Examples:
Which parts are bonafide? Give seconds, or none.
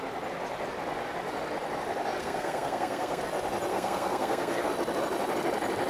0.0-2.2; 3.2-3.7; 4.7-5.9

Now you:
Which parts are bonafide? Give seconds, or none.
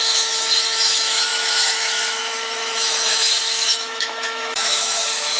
none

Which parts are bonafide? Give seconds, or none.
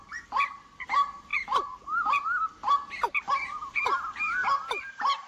0.0-4.4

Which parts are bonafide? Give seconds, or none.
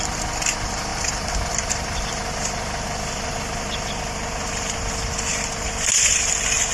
0.0-6.7